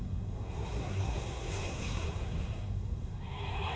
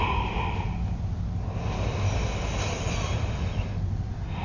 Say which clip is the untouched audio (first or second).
second